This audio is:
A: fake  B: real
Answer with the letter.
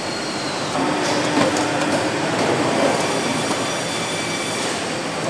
A